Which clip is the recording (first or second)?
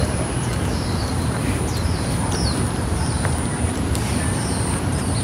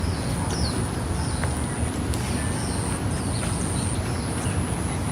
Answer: second